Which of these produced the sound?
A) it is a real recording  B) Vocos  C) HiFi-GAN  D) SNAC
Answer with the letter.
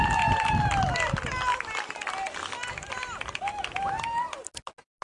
A